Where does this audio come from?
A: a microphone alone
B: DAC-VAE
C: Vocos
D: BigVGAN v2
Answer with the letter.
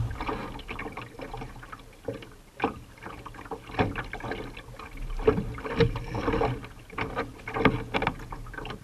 A